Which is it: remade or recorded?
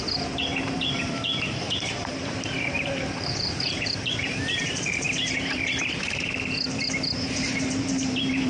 remade